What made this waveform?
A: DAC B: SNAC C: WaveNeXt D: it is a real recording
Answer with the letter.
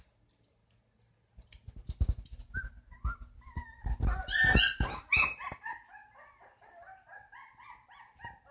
D